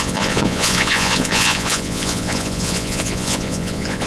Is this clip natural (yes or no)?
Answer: no